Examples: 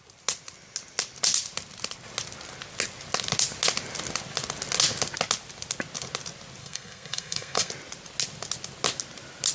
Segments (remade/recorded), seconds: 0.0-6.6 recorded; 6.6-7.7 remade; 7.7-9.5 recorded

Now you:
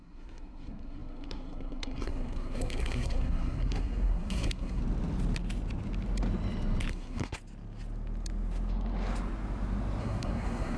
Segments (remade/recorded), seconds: 0.0-4.8 remade; 4.8-6.9 recorded; 6.9-7.4 remade; 7.4-10.0 recorded; 10.0-10.8 remade

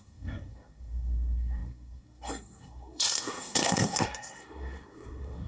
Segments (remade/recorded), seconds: 0.0-5.5 remade

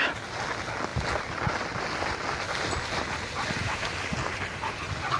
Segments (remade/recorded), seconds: 0.0-5.2 recorded

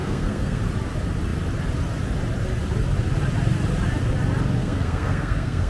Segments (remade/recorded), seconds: 0.0-0.6 remade; 0.6-4.6 recorded; 4.6-5.7 remade

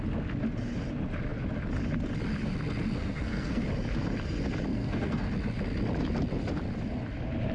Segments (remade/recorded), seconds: 0.0-3.0 recorded; 3.0-3.6 remade; 3.6-4.7 recorded; 4.7-5.3 remade; 5.3-7.5 recorded

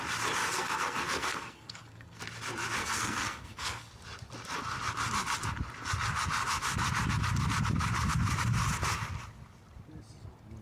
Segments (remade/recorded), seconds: 0.0-0.4 recorded; 0.4-2.2 remade; 2.2-2.8 recorded; 2.8-3.9 remade; 3.9-10.6 recorded